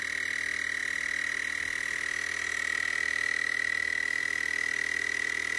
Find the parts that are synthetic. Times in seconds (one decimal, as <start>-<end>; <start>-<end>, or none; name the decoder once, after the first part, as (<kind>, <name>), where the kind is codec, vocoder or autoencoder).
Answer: none